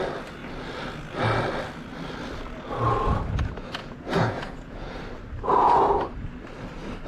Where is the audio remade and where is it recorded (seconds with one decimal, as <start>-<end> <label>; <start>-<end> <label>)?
0.0-3.8 recorded; 3.8-5.0 remade; 5.0-7.1 recorded